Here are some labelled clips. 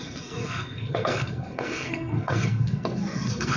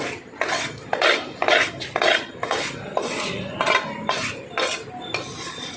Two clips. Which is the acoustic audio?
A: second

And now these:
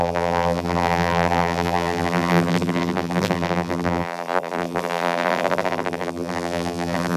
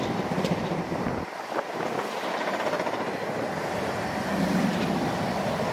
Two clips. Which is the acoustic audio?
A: second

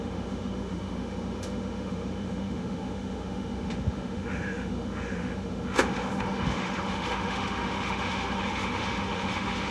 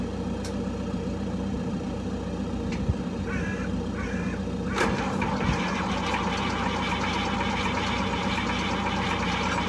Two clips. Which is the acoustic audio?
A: second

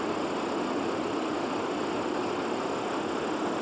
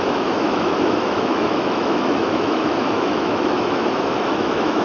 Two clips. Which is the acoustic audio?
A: first